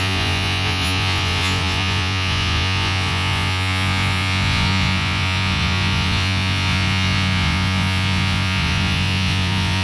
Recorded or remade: remade